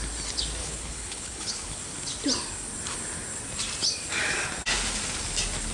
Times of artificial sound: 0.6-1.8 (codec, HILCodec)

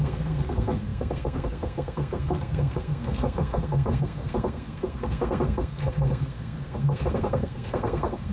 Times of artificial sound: 0.0-8.3 (codec, SNAC)

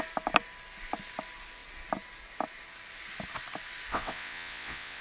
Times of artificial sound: 3.9-5.0 (vocoder, WaveNeXt)

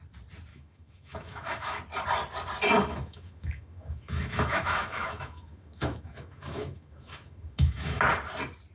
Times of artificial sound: 0.5-1.8 (autoencoder, DAC-VAE); 2.9-8.0

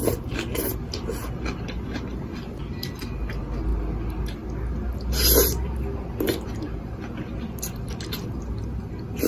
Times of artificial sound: none